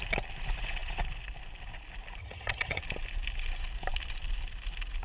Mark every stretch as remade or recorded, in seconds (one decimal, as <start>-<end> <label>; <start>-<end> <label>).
0.0-2.2 recorded; 2.2-2.8 remade; 2.8-5.0 recorded